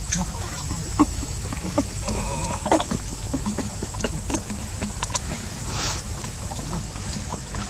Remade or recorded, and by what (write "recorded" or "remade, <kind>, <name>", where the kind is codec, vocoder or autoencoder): remade, autoencoder, DAC-VAE